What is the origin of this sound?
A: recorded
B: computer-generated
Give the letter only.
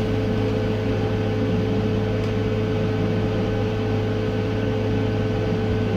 A